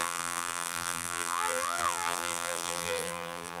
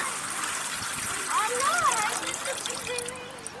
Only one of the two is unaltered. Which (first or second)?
second